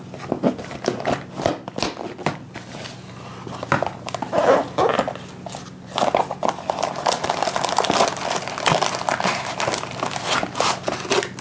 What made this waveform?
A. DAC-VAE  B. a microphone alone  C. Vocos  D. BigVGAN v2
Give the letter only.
B